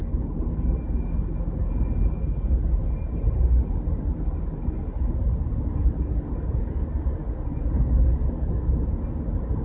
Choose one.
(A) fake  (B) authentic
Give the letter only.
B